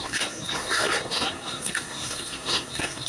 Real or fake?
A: fake